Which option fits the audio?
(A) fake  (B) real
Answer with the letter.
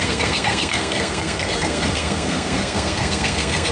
A